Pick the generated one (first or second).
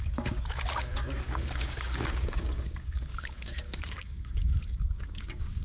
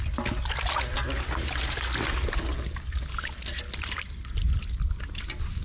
first